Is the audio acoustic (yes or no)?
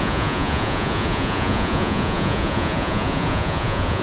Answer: no